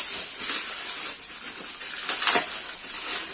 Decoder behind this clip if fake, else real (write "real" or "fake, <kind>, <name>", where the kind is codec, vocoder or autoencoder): real